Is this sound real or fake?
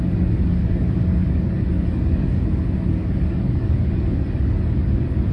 fake